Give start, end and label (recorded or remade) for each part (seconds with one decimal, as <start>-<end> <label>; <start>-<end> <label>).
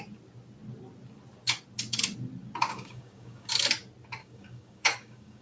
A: 0.0-2.7 recorded; 2.7-3.5 remade; 3.5-4.2 recorded; 4.2-5.4 remade